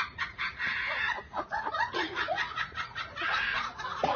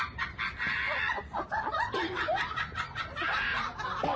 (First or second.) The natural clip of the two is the second